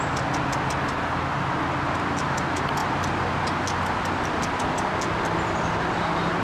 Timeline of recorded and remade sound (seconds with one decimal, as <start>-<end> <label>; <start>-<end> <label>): 0.0-6.4 recorded